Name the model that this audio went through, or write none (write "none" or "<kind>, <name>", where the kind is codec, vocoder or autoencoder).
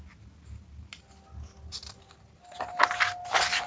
none